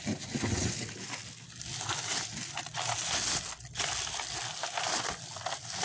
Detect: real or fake real